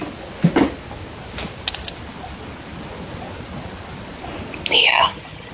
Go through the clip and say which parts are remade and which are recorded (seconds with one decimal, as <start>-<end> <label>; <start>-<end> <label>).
0.0-4.9 recorded; 4.9-5.5 remade